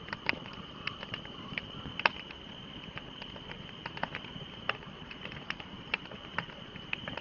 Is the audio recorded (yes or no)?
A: no